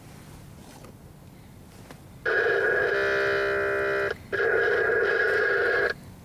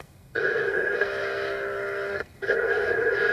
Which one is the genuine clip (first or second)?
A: first